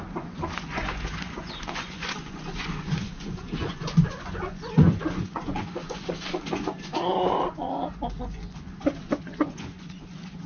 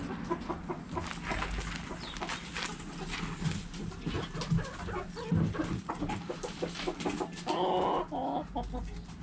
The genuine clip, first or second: second